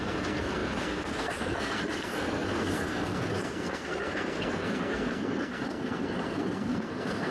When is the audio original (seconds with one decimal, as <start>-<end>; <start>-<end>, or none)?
none